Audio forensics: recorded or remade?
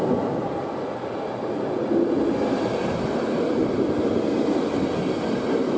recorded